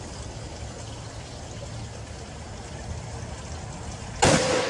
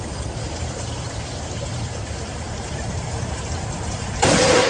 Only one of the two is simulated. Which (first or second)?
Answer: second